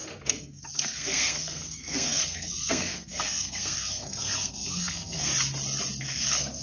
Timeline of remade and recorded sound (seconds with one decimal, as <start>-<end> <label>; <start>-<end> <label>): 0.0-5.3 remade; 5.3-6.0 recorded; 6.0-6.6 remade